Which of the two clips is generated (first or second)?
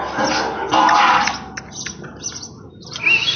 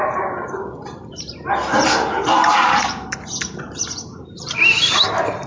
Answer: second